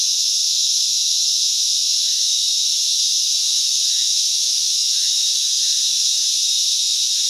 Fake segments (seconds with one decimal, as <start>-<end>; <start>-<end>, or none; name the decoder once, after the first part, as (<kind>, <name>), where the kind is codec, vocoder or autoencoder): 0.0-7.3 (autoencoder, DAC-VAE)